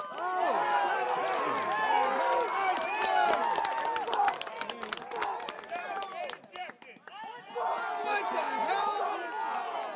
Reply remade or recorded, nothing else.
recorded